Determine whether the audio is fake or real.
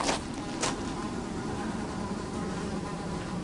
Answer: real